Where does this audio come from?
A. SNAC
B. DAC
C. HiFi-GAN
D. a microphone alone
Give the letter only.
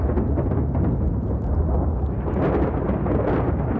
D